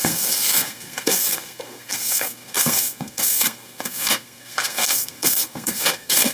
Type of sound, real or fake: fake